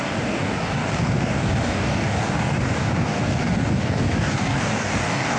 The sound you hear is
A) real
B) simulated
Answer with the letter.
B